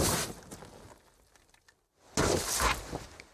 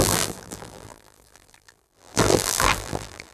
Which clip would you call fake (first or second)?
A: second